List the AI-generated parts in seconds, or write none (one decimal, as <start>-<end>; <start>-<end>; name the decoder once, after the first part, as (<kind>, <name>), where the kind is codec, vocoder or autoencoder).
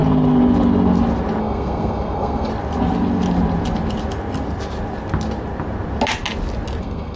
1.4-2.5 (codec, SNAC); 6.8-7.2